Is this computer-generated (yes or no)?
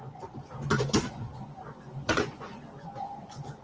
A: yes